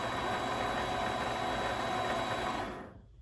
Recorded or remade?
recorded